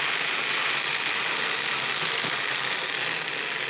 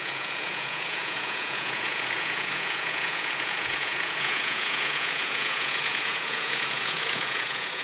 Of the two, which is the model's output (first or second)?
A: second